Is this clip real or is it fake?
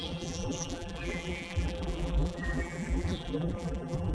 fake